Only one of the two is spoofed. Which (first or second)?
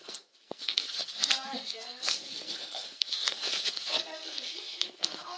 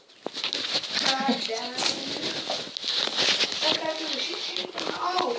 first